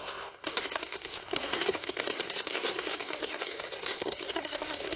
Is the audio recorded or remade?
remade